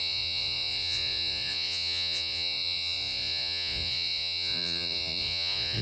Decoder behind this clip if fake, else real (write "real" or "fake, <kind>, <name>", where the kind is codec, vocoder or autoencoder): fake, vocoder, Vocos